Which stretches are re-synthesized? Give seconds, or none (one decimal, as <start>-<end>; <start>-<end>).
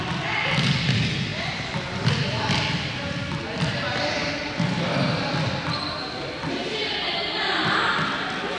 none